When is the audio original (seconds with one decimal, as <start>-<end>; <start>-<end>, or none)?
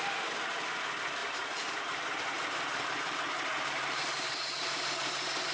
0.0-1.2; 4.5-5.5